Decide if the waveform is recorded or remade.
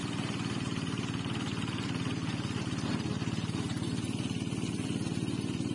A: recorded